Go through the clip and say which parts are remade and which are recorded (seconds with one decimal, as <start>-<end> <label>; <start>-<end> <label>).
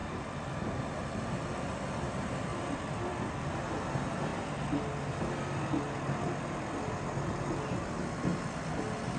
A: 0.0-2.5 recorded; 2.5-3.7 remade; 3.7-9.2 recorded